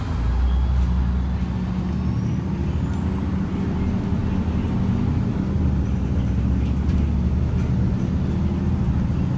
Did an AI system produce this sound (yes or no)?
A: no